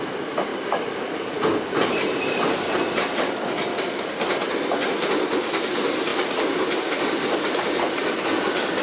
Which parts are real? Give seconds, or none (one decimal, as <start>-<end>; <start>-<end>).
0.0-8.8